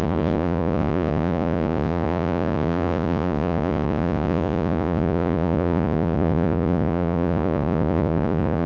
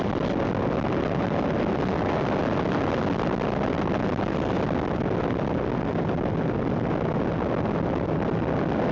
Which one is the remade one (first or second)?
first